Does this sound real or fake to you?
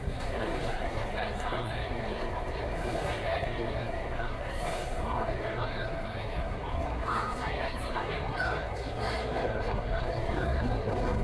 fake